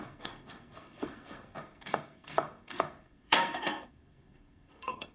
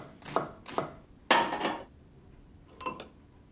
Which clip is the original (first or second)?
second